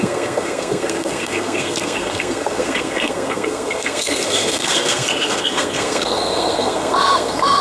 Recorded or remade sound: remade